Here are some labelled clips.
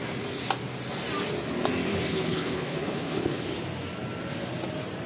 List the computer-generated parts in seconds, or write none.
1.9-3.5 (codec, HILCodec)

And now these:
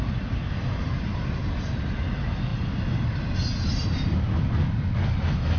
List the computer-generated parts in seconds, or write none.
none